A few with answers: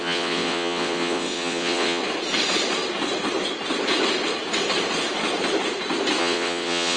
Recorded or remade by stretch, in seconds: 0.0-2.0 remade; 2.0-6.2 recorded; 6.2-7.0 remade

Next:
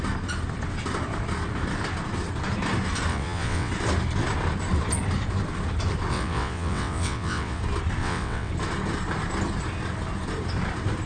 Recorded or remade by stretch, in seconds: 0.0-3.1 recorded; 3.1-3.7 remade; 3.7-6.1 recorded; 6.1-7.6 remade; 7.6-8.0 recorded; 8.0-8.5 remade; 8.5-11.1 recorded

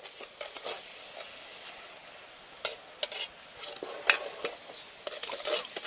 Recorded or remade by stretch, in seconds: 0.0-5.9 recorded

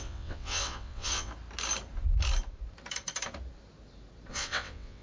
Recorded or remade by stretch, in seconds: 0.0-1.3 remade; 1.3-4.3 recorded; 4.3-5.0 remade

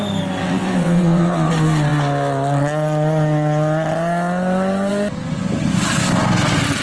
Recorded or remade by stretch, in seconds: 0.0-0.4 recorded; 0.4-1.5 remade; 1.5-6.8 recorded

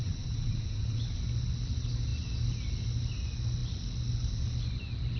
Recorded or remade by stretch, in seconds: 0.0-1.0 remade; 1.0-5.2 recorded

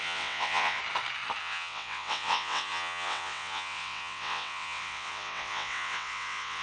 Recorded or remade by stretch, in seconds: 0.0-0.8 remade; 0.8-1.4 recorded; 1.4-6.6 remade

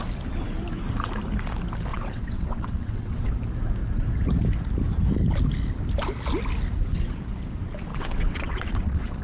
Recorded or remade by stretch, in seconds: 0.0-1.9 recorded; 1.9-3.3 remade; 3.3-7.9 recorded; 7.9-9.2 remade